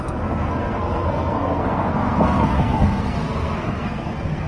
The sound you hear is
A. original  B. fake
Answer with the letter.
B